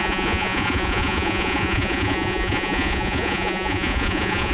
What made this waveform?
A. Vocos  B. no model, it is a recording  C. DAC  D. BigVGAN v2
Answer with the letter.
A